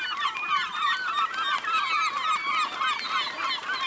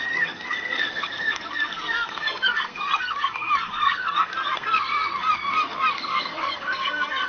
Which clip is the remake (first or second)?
second